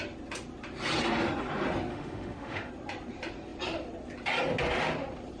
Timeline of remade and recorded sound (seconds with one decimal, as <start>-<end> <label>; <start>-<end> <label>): 0.0-1.9 recorded; 1.9-2.7 remade; 2.7-5.4 recorded